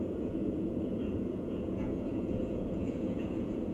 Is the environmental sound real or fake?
fake